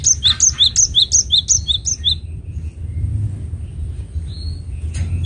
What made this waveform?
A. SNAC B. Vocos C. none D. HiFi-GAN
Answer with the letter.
C